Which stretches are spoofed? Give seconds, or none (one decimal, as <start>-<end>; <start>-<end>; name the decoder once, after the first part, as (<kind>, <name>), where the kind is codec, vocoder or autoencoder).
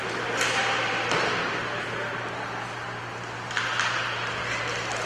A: none